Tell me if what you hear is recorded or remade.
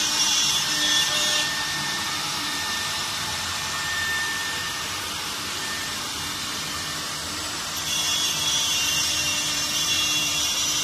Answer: remade